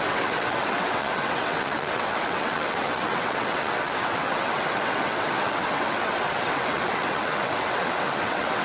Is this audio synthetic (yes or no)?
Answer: yes